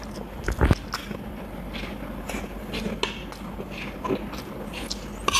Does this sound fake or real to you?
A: real